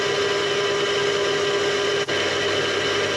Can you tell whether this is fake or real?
real